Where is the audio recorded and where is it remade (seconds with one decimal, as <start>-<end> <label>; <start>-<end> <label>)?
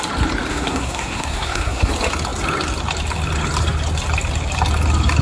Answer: 0.0-0.5 recorded; 0.5-1.9 remade; 1.9-5.2 recorded